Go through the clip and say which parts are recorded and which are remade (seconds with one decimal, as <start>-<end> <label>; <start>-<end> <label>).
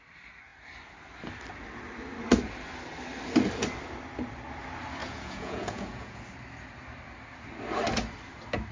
0.0-5.0 recorded; 5.0-6.2 remade; 6.2-8.7 recorded